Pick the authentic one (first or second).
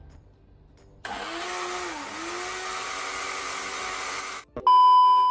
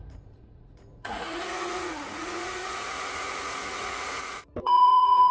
first